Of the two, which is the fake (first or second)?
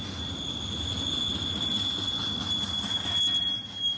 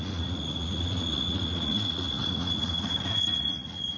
second